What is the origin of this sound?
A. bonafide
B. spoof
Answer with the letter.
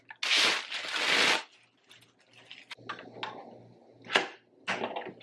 A